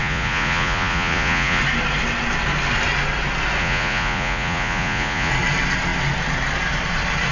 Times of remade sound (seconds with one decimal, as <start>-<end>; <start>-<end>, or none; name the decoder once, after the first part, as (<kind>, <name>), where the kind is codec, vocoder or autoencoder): 0.0-1.6 (vocoder, Vocos); 3.6-5.3